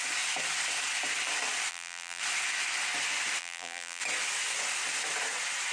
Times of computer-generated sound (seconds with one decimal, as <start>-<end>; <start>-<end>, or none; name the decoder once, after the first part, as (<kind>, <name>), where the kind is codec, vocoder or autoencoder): 1.7-2.2 (vocoder, BigVGAN v2); 3.4-4.0